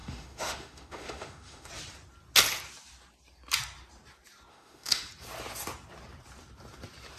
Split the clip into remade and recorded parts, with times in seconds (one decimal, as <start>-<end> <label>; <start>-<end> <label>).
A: 0.0-1.7 remade; 1.7-4.5 recorded; 4.5-5.1 remade; 5.1-7.2 recorded